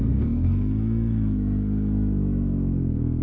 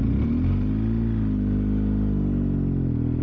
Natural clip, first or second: second